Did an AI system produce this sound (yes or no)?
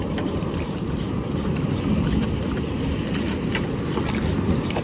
no